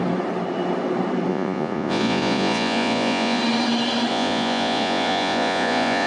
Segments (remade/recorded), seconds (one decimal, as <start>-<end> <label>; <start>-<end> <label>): 0.0-1.3 recorded; 1.3-3.4 remade; 3.4-4.1 recorded; 4.1-6.1 remade

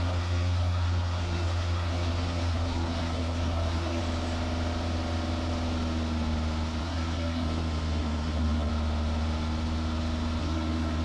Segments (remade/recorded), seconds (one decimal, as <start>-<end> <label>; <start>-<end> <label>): 0.0-4.0 remade; 4.0-6.8 recorded; 6.8-8.7 remade; 8.7-10.4 recorded; 10.4-11.0 remade

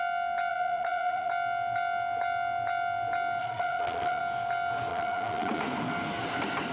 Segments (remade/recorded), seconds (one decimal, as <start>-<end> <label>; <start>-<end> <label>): 0.0-0.5 recorded; 0.5-1.3 remade; 1.3-3.4 recorded; 3.4-4.2 remade; 4.2-4.9 recorded; 4.9-5.6 remade; 5.6-6.7 recorded

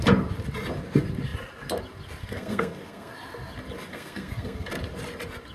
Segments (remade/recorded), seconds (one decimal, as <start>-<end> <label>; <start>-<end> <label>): 0.0-2.2 recorded; 2.2-3.1 remade; 3.1-3.9 recorded; 3.9-4.7 remade; 4.7-5.5 recorded

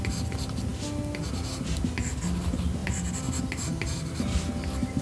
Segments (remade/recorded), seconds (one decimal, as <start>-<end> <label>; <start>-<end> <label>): 0.0-5.0 recorded

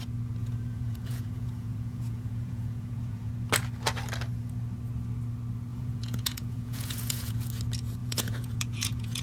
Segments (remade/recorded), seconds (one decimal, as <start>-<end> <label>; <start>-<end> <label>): 0.0-0.4 recorded; 0.4-3.3 remade; 3.3-5.7 recorded; 5.7-7.5 remade; 7.5-8.0 recorded; 8.0-9.2 remade

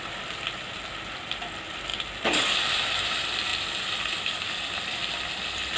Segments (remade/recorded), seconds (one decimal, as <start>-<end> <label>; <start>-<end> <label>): 0.0-5.8 recorded